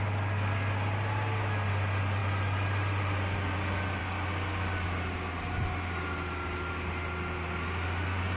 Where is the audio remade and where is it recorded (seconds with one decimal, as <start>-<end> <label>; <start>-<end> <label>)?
0.0-8.4 recorded